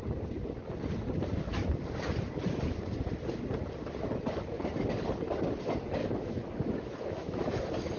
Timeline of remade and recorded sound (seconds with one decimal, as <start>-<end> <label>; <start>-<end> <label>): 0.0-6.0 recorded; 6.0-7.6 remade; 7.6-8.0 recorded